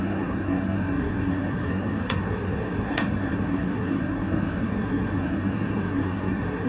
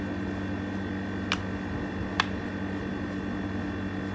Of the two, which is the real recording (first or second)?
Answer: second